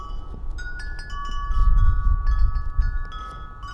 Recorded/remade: recorded